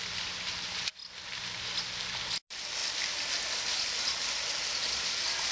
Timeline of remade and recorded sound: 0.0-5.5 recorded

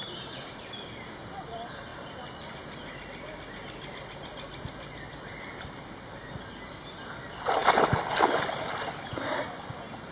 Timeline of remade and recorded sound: 0.0-10.1 recorded

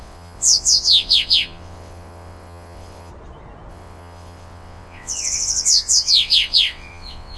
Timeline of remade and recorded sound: 0.0-3.1 remade; 3.1-3.7 recorded; 3.7-7.4 remade

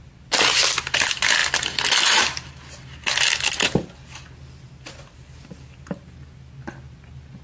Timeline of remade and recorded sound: 0.0-1.4 recorded; 1.4-2.6 remade; 2.6-7.4 recorded

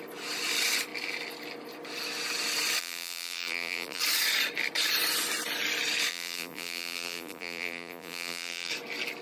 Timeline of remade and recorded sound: 0.0-2.8 recorded; 2.8-4.0 remade; 4.0-6.1 recorded; 6.1-8.7 remade; 8.7-9.2 recorded

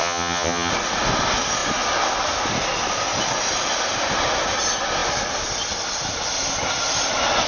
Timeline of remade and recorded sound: 0.0-0.7 remade; 0.7-7.5 recorded